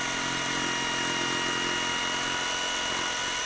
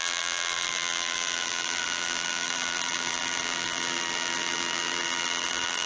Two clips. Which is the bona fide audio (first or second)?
first